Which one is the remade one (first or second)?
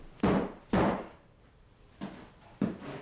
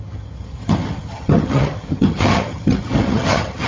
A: second